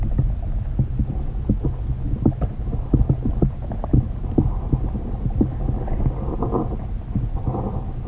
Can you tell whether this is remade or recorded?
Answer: recorded